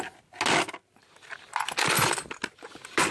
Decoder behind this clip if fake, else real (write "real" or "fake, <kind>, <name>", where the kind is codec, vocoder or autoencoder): real